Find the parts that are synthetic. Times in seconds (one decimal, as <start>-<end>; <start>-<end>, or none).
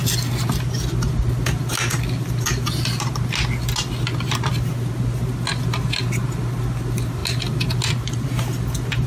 none